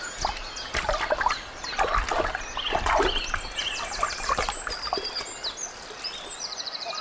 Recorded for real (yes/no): yes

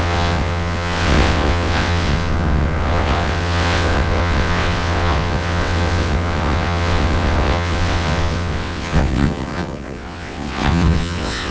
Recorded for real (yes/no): no